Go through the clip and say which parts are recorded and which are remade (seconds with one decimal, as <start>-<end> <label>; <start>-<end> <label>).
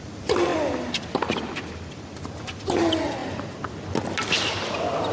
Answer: 0.0-5.1 recorded